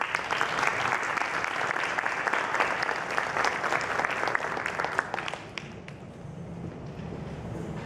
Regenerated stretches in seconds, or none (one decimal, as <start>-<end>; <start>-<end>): none